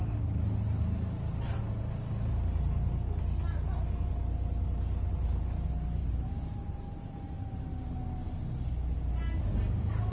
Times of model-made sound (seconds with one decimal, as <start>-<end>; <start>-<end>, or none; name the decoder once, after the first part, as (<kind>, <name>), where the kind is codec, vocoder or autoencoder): 6.0-7.5 (vocoder, BigVGAN v2)